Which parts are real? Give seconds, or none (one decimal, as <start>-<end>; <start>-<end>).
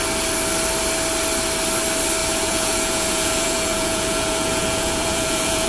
0.0-2.2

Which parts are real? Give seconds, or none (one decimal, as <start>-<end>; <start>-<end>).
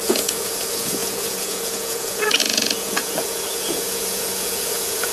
none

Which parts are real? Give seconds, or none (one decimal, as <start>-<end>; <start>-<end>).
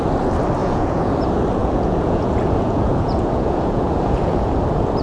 0.0-0.6; 1.1-1.6; 4.6-5.0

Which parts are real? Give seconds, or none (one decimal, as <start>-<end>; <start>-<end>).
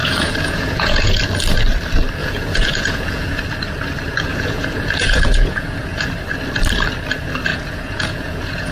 1.2-2.2; 3.4-4.3; 6.1-7.5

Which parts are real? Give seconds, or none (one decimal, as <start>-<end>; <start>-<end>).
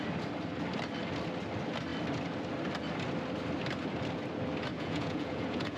0.0-4.7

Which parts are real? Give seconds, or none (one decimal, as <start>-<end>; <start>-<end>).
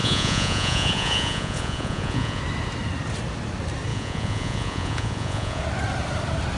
2.4-3.9; 5.6-6.6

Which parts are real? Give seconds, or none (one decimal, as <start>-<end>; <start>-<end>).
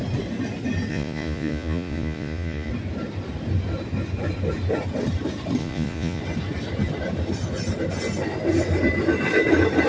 0.0-0.9; 2.7-5.6; 6.2-9.9